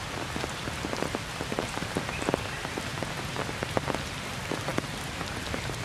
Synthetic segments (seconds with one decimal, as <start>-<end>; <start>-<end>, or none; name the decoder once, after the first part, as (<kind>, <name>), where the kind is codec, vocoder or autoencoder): 0.0-2.9 (vocoder, BigVGAN v2); 4.3-5.8